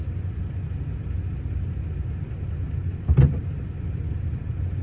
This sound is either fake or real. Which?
real